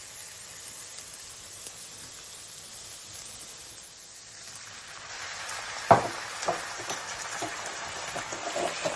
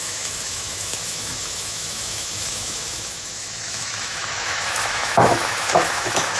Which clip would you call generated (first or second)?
second